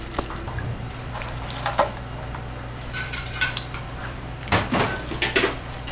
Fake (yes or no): yes